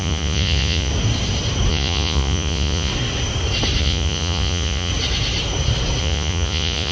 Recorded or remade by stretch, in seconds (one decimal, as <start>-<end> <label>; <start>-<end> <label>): 0.0-0.9 remade; 0.9-1.7 recorded; 1.7-2.9 remade; 2.9-3.8 recorded; 3.8-4.9 remade; 4.9-6.0 recorded; 6.0-6.9 remade